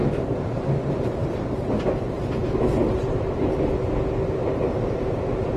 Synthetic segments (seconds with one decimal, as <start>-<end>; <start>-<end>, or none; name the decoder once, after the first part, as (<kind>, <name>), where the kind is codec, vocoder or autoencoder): 0.0-3.4 (vocoder, BigVGAN v2); 4.4-5.1